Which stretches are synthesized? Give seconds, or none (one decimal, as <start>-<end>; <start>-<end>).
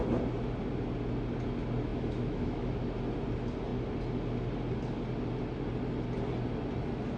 1.9-2.7